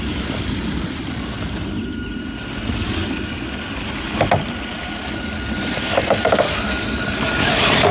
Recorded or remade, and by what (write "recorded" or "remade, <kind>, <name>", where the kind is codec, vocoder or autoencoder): recorded